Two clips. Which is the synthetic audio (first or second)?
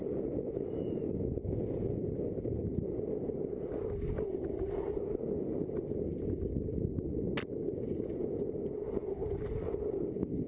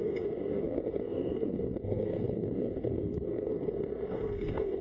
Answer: second